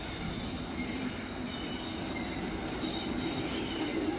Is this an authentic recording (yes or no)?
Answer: yes